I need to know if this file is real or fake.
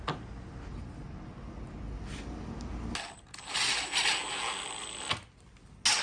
real